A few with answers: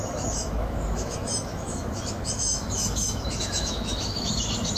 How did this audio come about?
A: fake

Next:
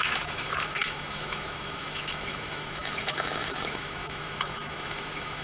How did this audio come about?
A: fake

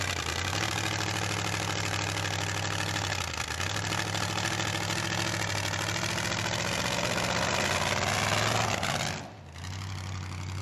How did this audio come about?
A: real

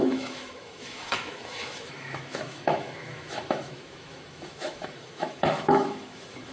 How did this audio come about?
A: fake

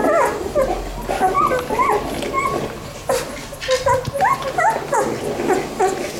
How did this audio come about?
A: real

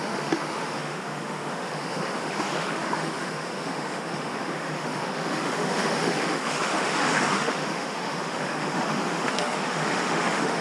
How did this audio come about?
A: fake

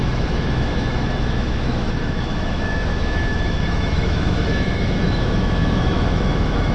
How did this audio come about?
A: fake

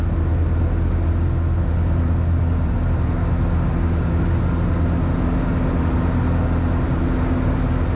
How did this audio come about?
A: real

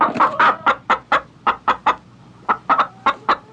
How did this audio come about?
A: real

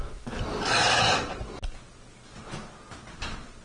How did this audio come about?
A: real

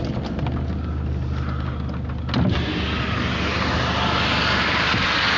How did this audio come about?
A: real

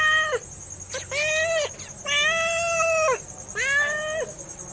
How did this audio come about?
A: real